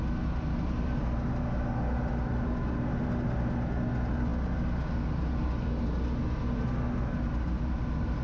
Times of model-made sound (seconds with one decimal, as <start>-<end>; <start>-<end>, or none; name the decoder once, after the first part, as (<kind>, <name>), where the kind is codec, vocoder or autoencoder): none